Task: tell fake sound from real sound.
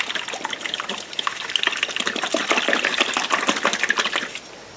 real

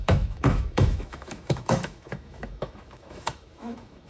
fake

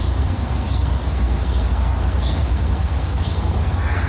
fake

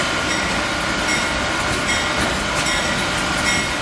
real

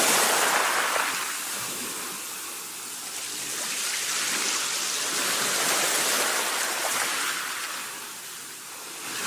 real